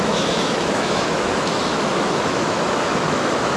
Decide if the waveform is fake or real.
fake